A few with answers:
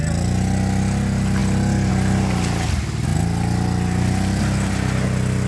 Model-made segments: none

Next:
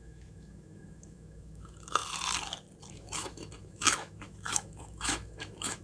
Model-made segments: 0.0-2.0 (autoencoder, DAC-VAE); 2.9-5.8

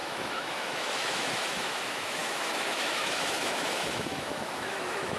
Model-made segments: 0.0-5.2 (autoencoder, DAC-VAE)

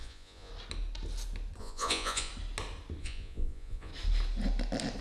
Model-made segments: 0.0-0.5 (vocoder, Vocos); 1.6-2.3; 3.0-3.9

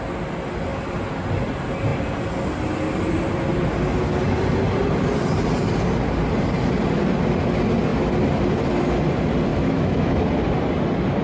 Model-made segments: 9.5-10.1 (autoencoder, DAC-VAE)

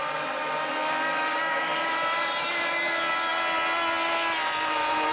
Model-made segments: 0.7-1.9 (codec, DAC)